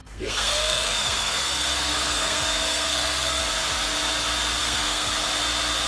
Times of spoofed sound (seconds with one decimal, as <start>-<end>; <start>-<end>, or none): 0.0-3.4; 4.6-5.1